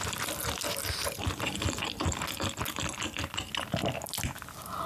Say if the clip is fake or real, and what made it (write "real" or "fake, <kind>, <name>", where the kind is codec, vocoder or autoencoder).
real